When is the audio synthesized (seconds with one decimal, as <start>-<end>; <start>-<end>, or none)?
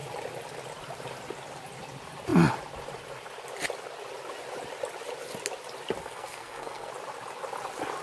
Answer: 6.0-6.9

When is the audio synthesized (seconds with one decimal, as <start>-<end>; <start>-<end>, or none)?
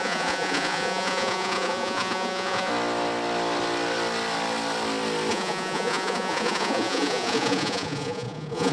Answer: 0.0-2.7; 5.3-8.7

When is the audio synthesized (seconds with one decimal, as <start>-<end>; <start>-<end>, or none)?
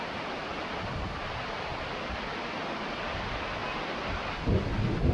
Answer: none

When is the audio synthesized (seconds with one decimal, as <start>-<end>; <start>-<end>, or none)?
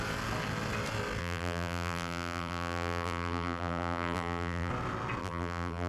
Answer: 1.2-4.7; 5.2-5.9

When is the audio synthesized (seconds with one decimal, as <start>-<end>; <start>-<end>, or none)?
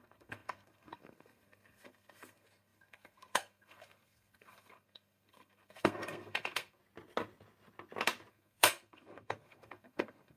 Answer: 0.0-6.8; 8.3-10.4